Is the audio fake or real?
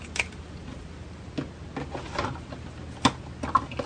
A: real